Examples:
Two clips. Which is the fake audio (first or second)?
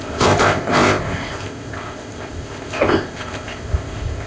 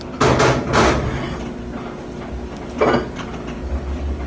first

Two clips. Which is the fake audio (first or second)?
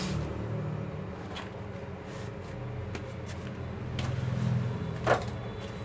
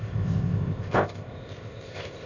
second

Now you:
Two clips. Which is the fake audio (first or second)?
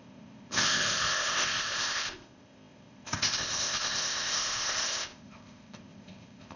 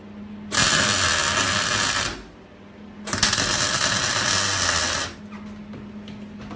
first